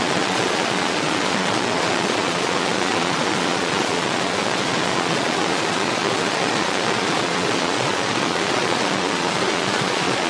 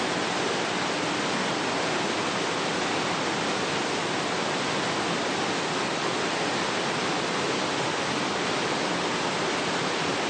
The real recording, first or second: second